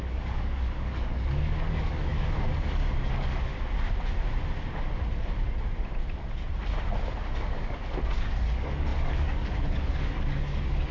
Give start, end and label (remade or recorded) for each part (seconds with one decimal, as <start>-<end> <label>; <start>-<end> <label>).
0.0-3.5 remade; 3.5-7.3 recorded; 7.3-10.9 remade